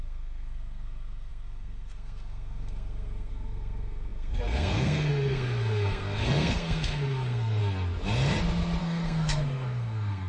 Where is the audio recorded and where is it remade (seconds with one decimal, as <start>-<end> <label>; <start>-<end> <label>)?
0.0-7.6 remade; 7.6-8.8 recorded; 8.8-10.3 remade